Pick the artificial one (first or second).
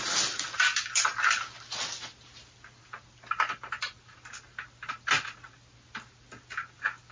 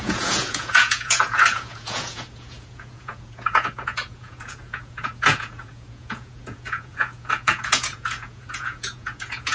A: second